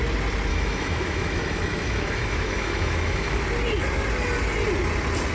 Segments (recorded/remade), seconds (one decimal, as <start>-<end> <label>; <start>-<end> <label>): 0.0-0.5 recorded; 0.5-3.4 remade; 3.4-5.3 recorded